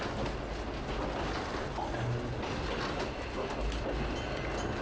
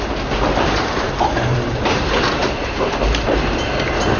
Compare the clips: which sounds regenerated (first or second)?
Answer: second